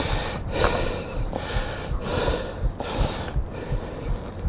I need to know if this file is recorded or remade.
recorded